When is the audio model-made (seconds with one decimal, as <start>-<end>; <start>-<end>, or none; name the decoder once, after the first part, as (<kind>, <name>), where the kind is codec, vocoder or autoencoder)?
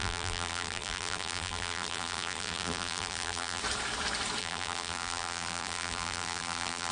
0.0-3.6 (vocoder, BigVGAN v2); 4.4-6.9